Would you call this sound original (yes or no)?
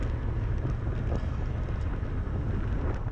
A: yes